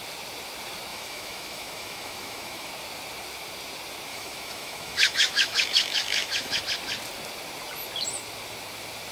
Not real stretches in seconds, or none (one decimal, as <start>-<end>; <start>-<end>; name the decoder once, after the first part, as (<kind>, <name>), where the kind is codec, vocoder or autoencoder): 0.9-2.7 (autoencoder, DAC-VAE); 4.1-6.6